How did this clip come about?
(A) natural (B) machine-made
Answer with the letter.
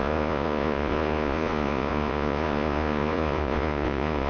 B